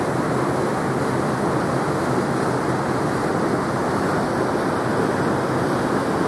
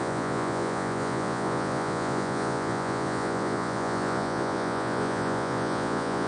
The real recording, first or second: first